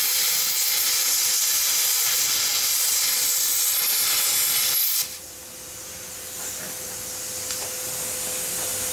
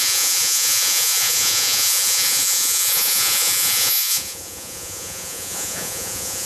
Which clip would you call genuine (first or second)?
first